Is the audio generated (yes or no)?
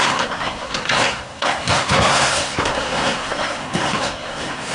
yes